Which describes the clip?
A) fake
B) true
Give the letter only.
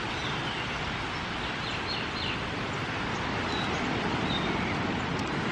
B